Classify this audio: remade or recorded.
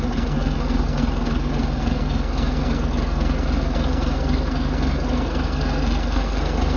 remade